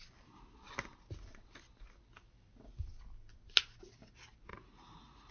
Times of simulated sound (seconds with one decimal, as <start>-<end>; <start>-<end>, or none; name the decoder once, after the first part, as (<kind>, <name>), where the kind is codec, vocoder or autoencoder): 4.5-5.3 (vocoder, Vocos)